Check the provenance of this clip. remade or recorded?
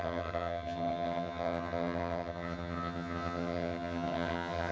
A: remade